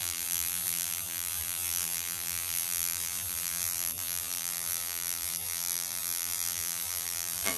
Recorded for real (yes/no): no